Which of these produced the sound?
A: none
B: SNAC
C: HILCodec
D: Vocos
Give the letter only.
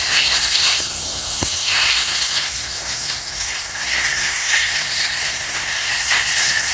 B